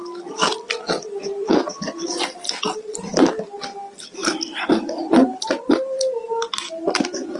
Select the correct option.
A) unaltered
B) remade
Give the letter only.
A